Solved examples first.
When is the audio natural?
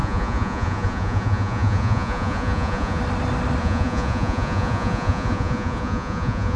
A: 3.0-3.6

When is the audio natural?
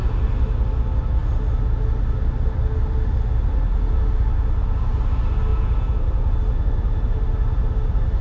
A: 0.0-5.5; 6.4-8.2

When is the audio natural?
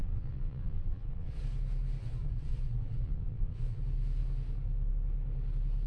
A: 1.4-2.0; 3.8-5.9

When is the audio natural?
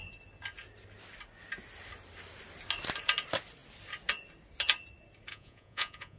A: 0.0-5.3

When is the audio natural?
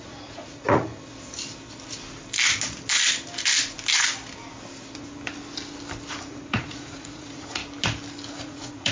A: 0.9-6.1; 7.6-8.3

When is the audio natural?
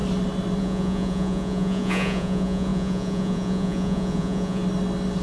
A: 0.0-0.6; 4.6-5.2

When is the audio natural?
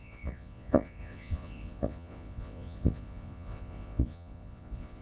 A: none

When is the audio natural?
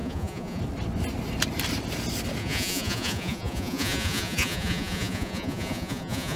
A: 0.6-2.4